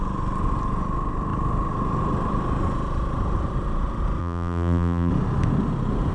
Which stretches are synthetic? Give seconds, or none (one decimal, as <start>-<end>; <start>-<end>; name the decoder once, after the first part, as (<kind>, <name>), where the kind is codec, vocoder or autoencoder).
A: 4.2-5.1 (vocoder, BigVGAN v2)